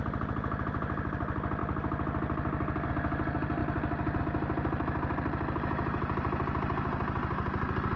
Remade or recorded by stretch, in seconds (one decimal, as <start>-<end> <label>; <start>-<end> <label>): 0.0-8.0 recorded